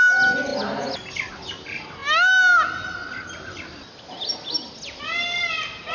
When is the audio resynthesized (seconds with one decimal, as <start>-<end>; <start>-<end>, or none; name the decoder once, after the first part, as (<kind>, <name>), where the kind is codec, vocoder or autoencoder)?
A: none